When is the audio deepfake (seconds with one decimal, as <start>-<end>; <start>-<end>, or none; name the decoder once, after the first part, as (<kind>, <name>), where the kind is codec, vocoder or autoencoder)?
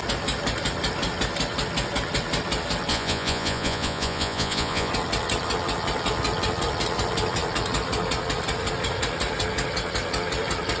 2.9-4.9 (vocoder, Vocos)